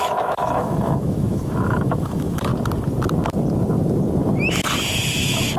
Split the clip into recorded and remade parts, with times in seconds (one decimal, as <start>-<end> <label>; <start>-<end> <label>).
0.0-2.5 remade; 2.5-5.6 recorded